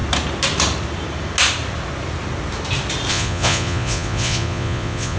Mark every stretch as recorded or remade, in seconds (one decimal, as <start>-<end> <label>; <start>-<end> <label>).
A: 0.0-3.1 recorded; 3.1-5.2 remade